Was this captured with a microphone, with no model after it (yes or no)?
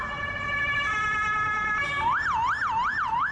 yes